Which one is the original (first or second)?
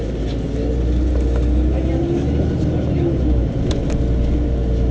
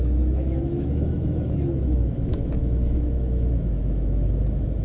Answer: first